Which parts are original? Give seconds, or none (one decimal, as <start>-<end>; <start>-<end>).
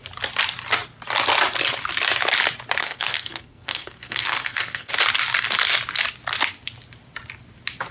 0.0-2.8; 4.9-7.9